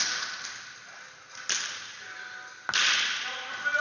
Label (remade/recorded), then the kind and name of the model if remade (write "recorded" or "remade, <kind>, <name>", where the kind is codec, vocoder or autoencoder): recorded